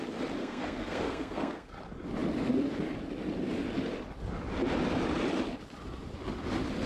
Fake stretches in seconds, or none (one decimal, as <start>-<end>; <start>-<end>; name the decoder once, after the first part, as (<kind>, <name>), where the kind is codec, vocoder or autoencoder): 0.4-1.7 (codec, SNAC)